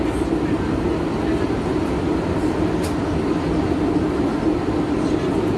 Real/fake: real